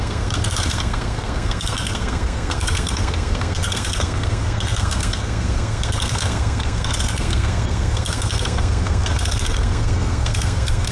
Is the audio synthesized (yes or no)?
yes